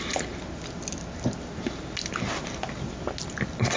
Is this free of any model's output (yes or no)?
yes